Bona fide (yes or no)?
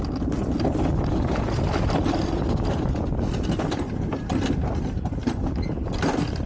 yes